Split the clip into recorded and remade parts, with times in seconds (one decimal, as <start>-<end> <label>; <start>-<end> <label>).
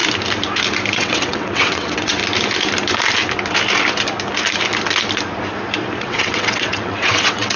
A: 0.0-0.9 recorded; 0.9-2.2 remade; 2.2-6.0 recorded; 6.0-7.6 remade